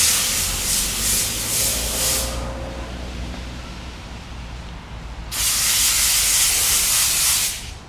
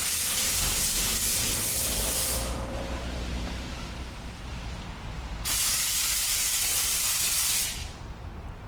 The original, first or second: first